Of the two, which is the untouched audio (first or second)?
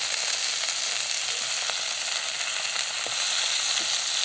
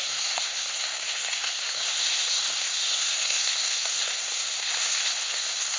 first